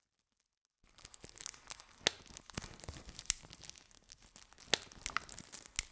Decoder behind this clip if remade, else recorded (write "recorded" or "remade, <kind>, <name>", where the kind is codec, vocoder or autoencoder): recorded